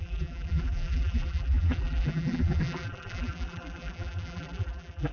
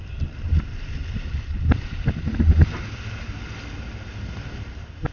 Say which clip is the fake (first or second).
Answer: first